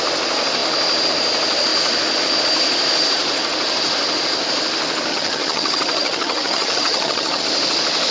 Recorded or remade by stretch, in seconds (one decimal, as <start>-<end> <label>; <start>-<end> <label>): 0.0-5.1 recorded; 5.1-7.4 remade; 7.4-8.1 recorded